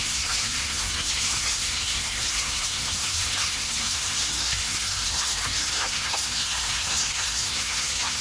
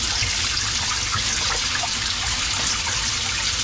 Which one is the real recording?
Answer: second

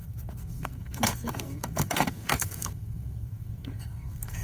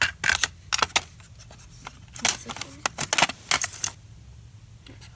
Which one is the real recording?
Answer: second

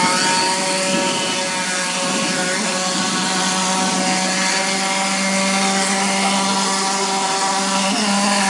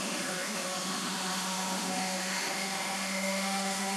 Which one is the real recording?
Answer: first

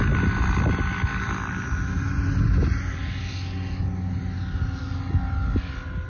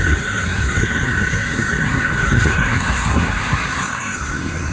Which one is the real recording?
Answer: first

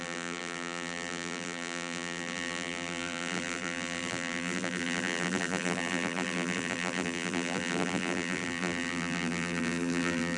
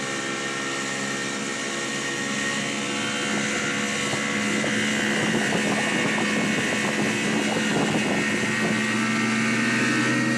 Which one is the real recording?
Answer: second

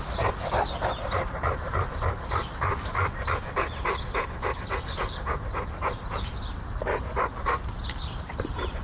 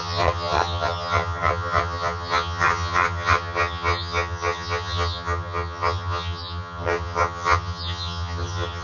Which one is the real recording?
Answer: first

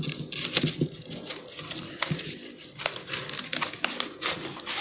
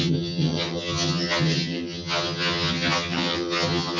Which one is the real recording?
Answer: first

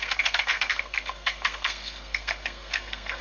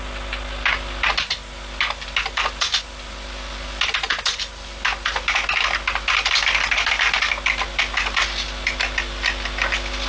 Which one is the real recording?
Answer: second